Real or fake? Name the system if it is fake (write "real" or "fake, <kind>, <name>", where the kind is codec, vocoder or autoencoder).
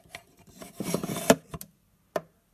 real